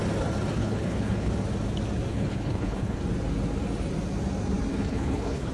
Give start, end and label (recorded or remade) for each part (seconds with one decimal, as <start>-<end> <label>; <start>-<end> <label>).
0.0-0.6 recorded; 0.6-1.3 remade; 1.3-2.1 recorded; 2.1-3.0 remade; 3.0-4.7 recorded; 4.7-5.5 remade